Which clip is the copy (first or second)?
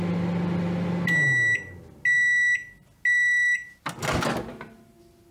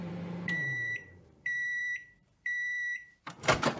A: second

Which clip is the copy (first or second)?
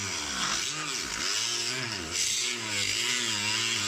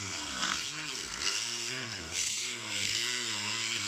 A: second